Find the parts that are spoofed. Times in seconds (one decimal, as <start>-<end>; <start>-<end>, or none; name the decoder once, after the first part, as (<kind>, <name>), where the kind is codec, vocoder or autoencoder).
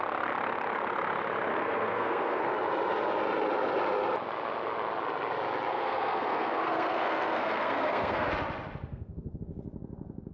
1.5-2.4 (codec, SNAC); 5.7-8.3; 8.9-9.4